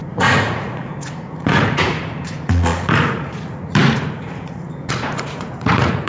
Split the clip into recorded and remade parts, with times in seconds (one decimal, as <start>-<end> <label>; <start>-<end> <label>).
0.0-6.1 remade